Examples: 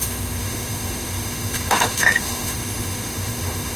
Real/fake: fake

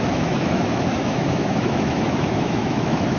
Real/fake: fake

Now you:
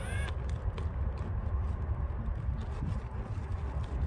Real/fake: real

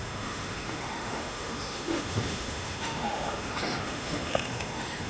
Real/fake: fake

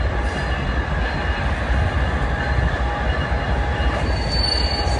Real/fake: real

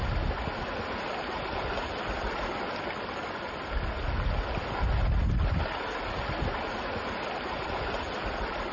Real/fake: real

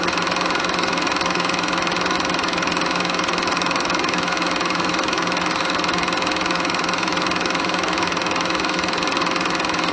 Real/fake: fake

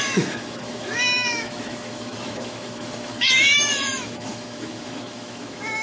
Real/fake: fake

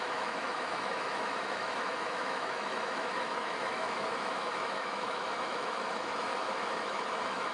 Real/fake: fake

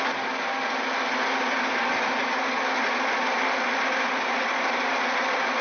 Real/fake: real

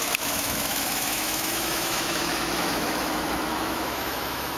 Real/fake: fake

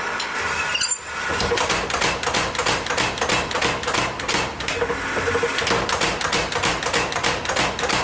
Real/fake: real